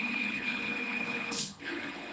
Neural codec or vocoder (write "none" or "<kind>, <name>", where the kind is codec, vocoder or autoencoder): codec, HILCodec